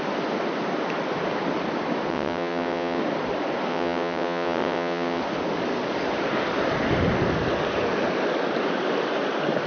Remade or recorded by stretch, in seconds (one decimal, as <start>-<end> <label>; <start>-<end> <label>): 0.0-2.1 recorded; 2.1-3.0 remade; 3.0-3.7 recorded; 3.7-5.2 remade; 5.2-9.7 recorded